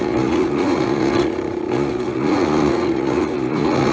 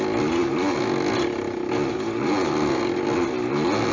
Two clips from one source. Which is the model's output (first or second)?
first